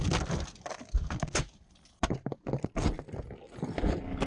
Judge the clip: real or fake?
real